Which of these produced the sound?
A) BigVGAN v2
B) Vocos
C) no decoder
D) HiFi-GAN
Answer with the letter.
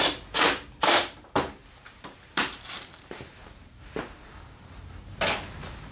A